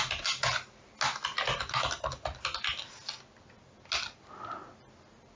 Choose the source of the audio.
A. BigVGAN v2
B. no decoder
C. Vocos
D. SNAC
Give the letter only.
B